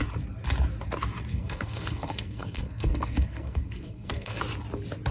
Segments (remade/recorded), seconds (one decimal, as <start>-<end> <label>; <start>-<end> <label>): 0.0-1.3 recorded; 1.3-4.4 remade; 4.4-5.1 recorded